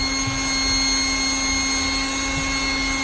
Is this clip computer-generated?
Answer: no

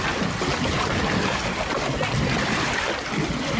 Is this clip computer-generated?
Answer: no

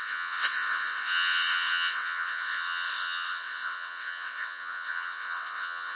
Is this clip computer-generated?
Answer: yes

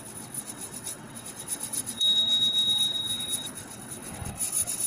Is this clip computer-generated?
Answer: yes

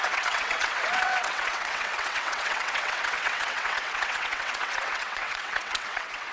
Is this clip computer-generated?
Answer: yes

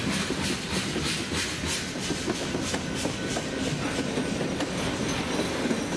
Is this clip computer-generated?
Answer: no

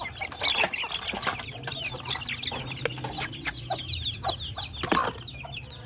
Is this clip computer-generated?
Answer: no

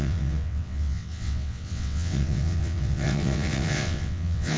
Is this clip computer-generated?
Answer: yes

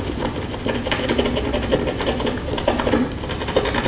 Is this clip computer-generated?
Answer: no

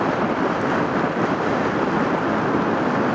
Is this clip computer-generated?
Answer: no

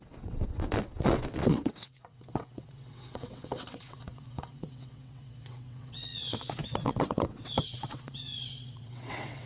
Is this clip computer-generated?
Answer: yes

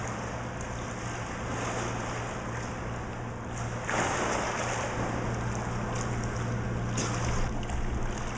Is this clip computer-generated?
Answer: no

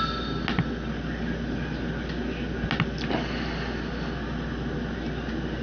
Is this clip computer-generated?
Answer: no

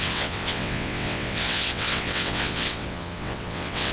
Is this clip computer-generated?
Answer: yes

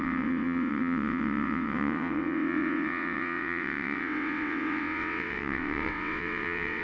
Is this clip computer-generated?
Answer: yes